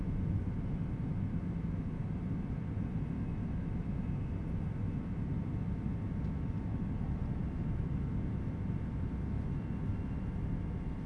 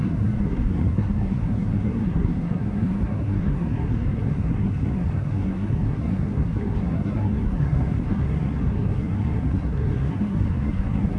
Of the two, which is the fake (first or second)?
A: second